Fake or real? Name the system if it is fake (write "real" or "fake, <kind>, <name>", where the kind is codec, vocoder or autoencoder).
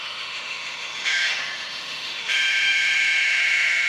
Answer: fake, autoencoder, DAC-VAE